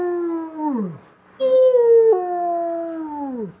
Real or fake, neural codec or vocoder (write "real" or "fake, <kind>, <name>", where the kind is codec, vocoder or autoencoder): real